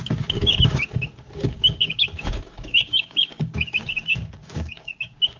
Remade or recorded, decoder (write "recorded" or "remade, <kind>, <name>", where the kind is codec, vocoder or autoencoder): remade, codec, DAC